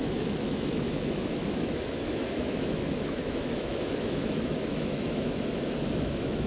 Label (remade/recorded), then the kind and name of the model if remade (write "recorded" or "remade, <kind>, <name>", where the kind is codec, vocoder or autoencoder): remade, autoencoder, DAC-VAE